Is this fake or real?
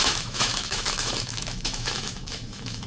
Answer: fake